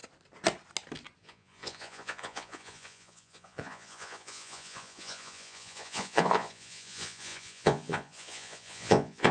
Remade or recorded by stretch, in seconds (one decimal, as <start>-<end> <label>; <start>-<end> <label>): 0.0-1.2 recorded; 1.2-9.3 remade

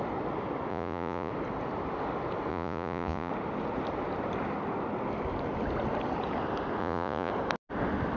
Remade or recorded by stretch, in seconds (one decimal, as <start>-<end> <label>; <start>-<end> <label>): 0.0-0.7 recorded; 0.7-1.3 remade; 1.3-2.5 recorded; 2.5-3.3 remade; 3.3-6.8 recorded; 6.8-7.3 remade; 7.3-8.2 recorded

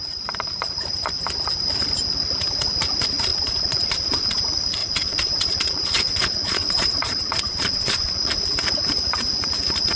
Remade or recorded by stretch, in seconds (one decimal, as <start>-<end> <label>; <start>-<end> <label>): 0.0-3.3 recorded; 3.3-4.3 remade; 4.3-4.8 recorded; 4.8-8.3 remade; 8.3-10.0 recorded

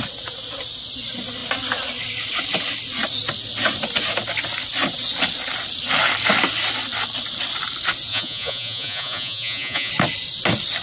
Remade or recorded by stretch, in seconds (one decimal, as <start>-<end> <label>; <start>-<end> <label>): 0.0-8.1 recorded; 8.1-9.9 remade; 9.9-10.8 recorded

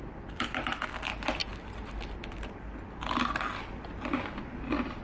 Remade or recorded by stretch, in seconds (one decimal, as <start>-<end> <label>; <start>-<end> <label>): 0.0-5.0 recorded

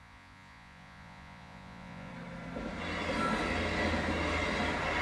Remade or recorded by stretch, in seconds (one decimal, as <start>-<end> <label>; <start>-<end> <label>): 0.0-2.1 remade; 2.1-5.0 recorded

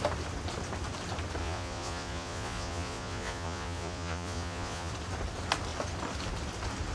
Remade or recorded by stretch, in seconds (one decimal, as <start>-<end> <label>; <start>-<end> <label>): 0.0-1.4 recorded; 1.4-4.9 remade; 4.9-6.9 recorded